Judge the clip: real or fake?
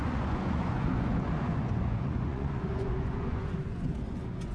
fake